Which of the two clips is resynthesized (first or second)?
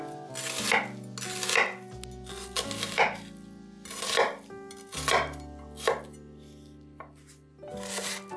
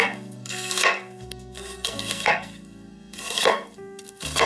second